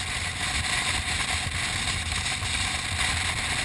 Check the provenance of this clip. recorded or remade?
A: recorded